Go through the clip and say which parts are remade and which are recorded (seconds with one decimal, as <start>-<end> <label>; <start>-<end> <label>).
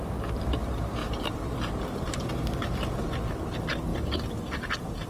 0.0-1.0 recorded; 1.0-2.3 remade; 2.3-3.9 recorded; 3.9-5.1 remade